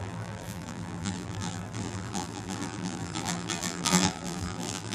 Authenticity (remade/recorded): remade